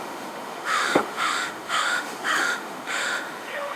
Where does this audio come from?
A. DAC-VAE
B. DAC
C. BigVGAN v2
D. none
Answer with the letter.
A